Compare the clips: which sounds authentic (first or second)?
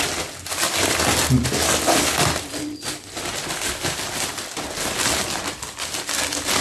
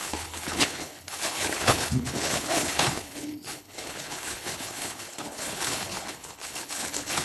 first